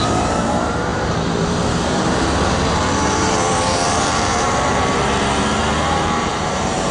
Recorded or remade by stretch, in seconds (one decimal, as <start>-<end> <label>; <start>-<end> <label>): 0.0-6.9 remade